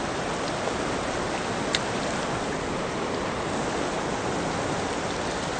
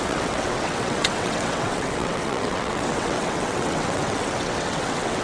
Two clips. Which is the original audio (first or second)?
first